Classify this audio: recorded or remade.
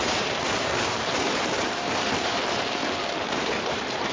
remade